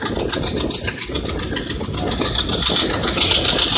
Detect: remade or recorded recorded